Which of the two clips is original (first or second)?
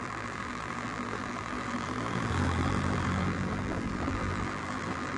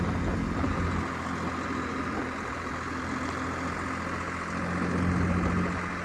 second